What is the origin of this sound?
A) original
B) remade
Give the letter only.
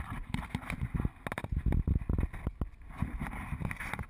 A